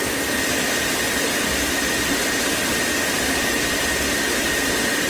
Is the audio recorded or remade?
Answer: recorded